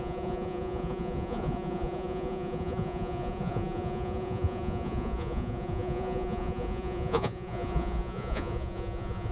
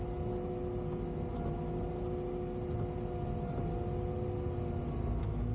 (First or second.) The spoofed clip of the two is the first